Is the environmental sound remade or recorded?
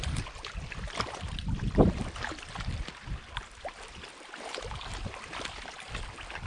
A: remade